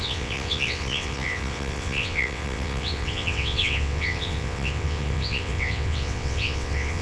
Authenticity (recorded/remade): remade